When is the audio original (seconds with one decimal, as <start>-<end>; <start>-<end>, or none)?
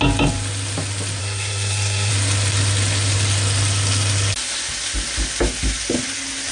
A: 0.0-1.2; 2.1-6.5